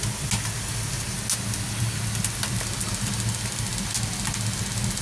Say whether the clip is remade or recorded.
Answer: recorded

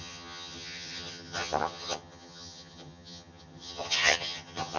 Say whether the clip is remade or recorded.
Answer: remade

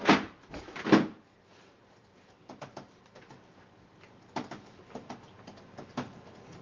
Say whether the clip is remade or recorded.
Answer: recorded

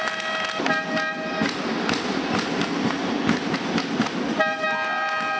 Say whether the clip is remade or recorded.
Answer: recorded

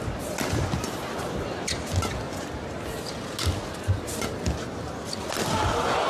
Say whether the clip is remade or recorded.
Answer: recorded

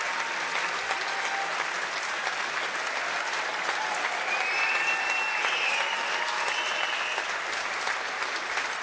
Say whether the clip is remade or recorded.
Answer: recorded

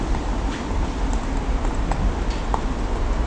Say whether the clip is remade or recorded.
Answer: recorded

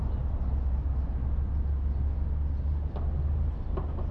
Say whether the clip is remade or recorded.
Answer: recorded